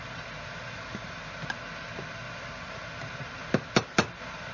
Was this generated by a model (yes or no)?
no